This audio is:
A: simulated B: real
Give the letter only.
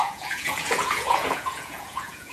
A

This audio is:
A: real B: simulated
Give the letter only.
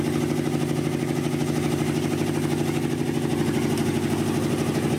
A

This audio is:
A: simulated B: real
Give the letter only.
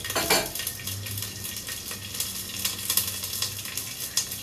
B